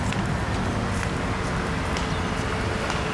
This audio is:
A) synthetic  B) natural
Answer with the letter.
B